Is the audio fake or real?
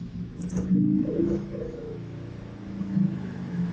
fake